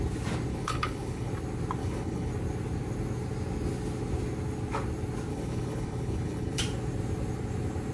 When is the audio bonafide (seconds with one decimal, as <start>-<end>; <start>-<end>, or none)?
0.0-0.5; 1.3-1.8; 2.3-5.3; 6.6-7.9